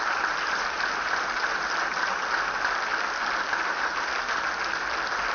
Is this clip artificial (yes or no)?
no